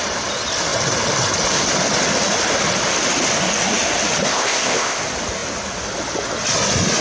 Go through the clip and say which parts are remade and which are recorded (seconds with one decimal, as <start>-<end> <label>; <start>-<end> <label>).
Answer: 0.0-4.3 recorded; 4.3-5.0 remade; 5.0-7.0 recorded